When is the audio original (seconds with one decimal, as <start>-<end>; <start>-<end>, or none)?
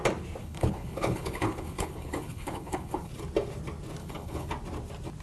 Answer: 0.0-0.4; 3.1-4.0; 4.5-5.2